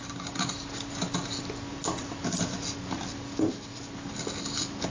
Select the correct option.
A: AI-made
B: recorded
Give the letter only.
B